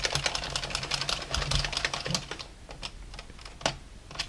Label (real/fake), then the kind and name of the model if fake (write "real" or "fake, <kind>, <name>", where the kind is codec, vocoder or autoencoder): real